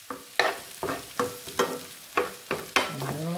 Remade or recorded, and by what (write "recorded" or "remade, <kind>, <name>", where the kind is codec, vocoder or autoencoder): recorded